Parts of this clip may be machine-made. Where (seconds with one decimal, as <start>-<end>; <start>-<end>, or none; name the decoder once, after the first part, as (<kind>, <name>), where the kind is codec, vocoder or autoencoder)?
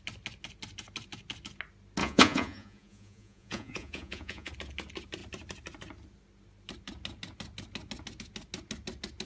2.0-4.5 (vocoder, Vocos)